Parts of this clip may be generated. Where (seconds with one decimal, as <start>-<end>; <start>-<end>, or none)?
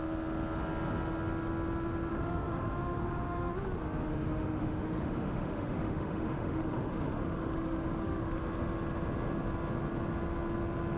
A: 2.1-3.5; 4.1-8.4